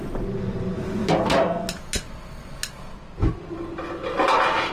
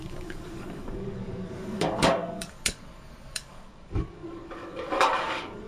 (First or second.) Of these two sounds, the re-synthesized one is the second